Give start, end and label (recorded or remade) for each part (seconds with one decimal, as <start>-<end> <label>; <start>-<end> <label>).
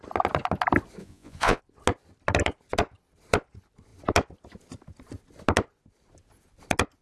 0.0-1.0 recorded; 1.0-1.6 remade; 1.6-7.0 recorded